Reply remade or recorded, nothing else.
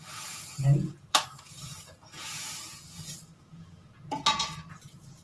remade